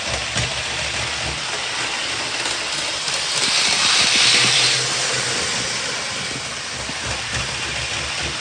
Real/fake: real